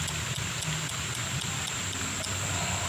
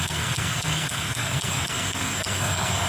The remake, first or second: second